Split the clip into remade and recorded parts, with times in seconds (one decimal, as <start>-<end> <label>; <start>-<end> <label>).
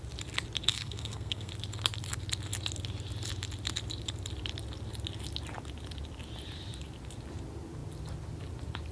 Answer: 0.0-0.7 recorded; 0.7-1.5 remade; 1.5-8.9 recorded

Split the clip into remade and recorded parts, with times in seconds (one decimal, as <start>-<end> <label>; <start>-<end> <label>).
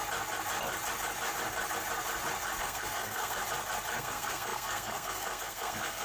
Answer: 0.0-2.6 recorded; 2.6-3.4 remade; 3.4-3.9 recorded; 3.9-6.0 remade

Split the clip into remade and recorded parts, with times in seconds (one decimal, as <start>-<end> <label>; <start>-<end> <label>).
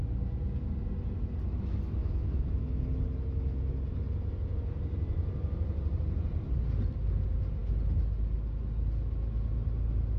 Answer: 0.0-2.0 recorded; 2.0-2.8 remade; 2.8-10.2 recorded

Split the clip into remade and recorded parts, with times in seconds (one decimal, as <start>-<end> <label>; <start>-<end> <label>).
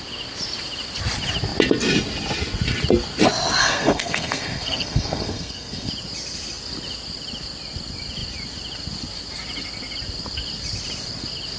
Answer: 0.0-3.6 recorded; 3.6-5.9 remade; 5.9-11.6 recorded